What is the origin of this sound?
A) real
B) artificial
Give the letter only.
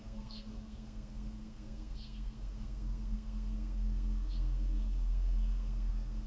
B